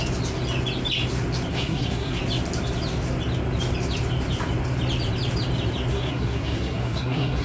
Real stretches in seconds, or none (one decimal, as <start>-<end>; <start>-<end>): 0.0-1.5; 2.2-5.9